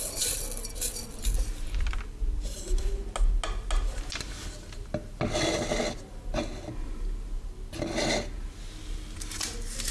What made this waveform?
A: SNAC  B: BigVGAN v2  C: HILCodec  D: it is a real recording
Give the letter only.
D